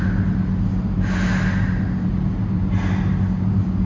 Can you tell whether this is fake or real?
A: real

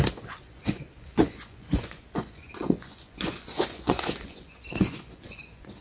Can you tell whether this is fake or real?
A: fake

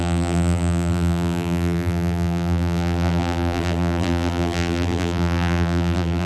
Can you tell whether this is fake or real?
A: fake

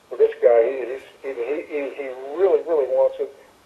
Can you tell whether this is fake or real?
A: fake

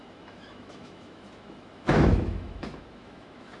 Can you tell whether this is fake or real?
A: fake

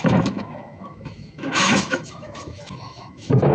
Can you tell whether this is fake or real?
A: fake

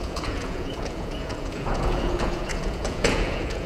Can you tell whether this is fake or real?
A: fake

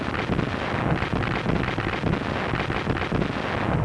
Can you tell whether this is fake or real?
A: real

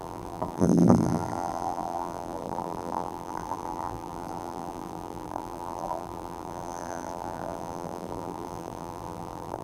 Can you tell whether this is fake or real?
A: fake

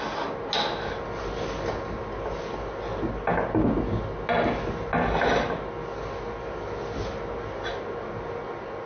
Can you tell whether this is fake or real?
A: real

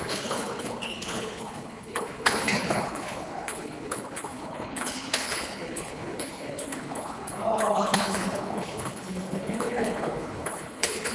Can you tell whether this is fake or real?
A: fake